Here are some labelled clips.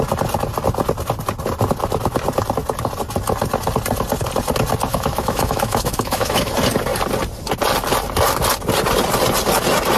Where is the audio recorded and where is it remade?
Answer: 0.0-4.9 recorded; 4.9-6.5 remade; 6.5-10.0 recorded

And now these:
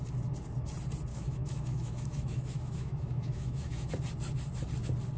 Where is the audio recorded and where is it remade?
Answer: 0.0-1.1 recorded; 1.1-3.9 remade; 3.9-5.2 recorded

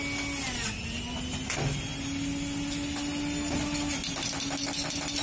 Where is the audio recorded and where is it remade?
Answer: 0.0-5.2 recorded

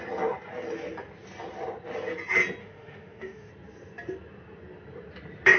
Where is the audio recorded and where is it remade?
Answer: 0.0-2.6 recorded; 2.6-3.5 remade; 3.5-5.6 recorded

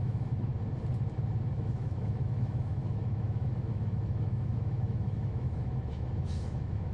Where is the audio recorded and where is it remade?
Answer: 0.0-0.5 remade; 0.5-1.5 recorded; 1.5-6.9 remade

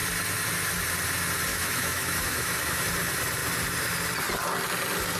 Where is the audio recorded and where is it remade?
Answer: 0.0-1.5 recorded; 1.5-2.8 remade; 2.8-5.2 recorded

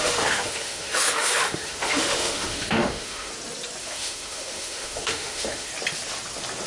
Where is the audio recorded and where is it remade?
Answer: 0.0-3.3 remade; 3.3-3.8 recorded; 3.8-5.7 remade; 5.7-6.7 recorded